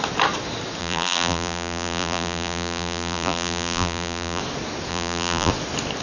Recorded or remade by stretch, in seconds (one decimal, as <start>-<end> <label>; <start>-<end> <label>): 0.0-0.8 recorded; 0.8-4.4 remade; 4.4-4.9 recorded; 4.9-5.5 remade; 5.5-6.0 recorded